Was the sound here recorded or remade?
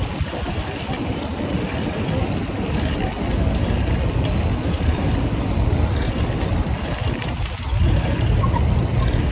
recorded